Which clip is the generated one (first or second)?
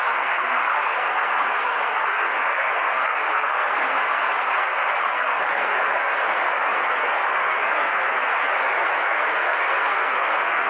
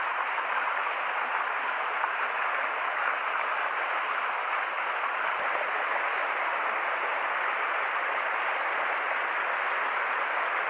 first